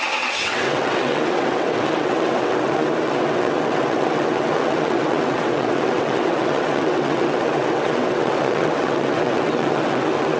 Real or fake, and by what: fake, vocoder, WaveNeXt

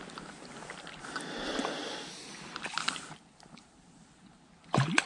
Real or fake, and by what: real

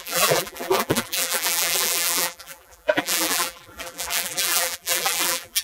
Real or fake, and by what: fake, vocoder, BigVGAN v2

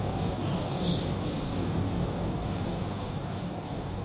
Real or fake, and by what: fake, codec, DAC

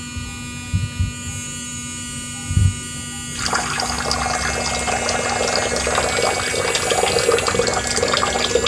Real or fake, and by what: real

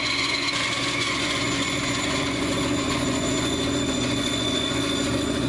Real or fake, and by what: fake, vocoder, Vocos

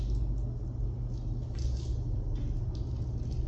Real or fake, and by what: real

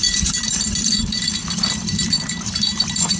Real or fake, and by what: fake, vocoder, BigVGAN v2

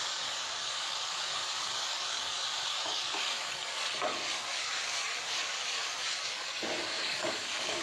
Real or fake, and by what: fake, codec, DAC